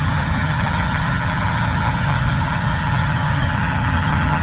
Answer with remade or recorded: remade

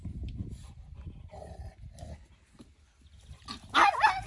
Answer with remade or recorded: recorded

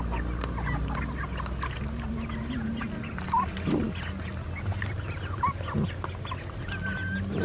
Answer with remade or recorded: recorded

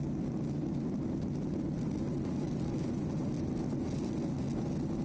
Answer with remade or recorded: recorded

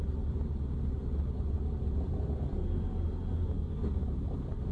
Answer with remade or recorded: recorded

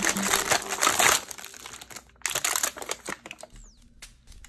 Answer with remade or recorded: recorded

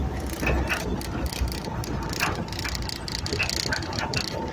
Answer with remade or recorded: recorded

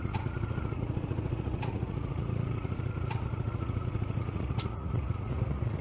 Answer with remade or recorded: remade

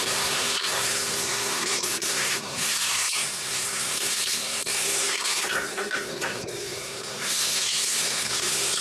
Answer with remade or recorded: remade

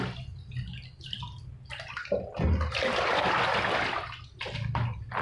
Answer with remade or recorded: recorded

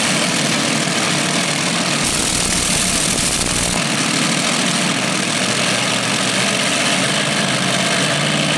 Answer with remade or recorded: recorded